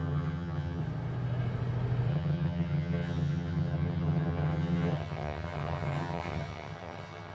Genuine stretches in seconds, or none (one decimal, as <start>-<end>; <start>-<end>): 0.8-2.1